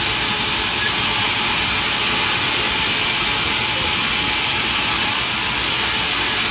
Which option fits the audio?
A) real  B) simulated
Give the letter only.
A